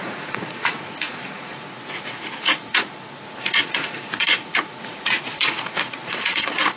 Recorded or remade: remade